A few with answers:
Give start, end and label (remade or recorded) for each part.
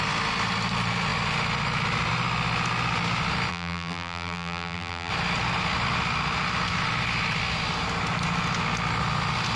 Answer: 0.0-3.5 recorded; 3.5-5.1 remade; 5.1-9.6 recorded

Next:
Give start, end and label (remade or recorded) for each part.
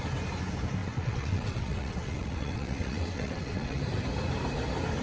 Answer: 0.0-0.8 recorded; 0.8-3.8 remade; 3.8-5.0 recorded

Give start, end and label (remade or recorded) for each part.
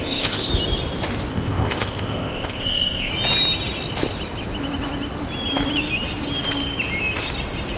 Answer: 0.0-0.5 remade; 0.5-1.3 recorded; 1.3-3.1 remade; 3.1-7.8 recorded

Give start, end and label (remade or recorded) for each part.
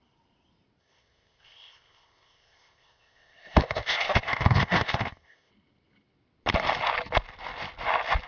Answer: 0.0-0.8 recorded; 0.8-5.5 remade; 5.5-8.3 recorded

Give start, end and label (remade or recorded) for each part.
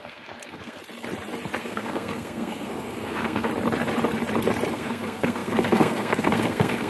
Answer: 0.0-0.8 remade; 0.8-1.6 recorded; 1.6-3.5 remade; 3.5-4.7 recorded; 4.7-6.9 remade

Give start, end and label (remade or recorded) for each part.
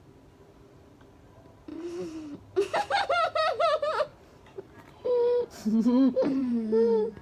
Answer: 0.0-4.1 recorded; 4.1-6.5 remade; 6.5-7.2 recorded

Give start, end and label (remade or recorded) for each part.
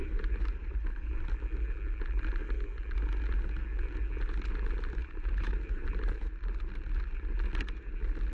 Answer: 0.0-1.2 remade; 1.2-5.0 recorded; 5.0-6.3 remade; 6.3-8.3 recorded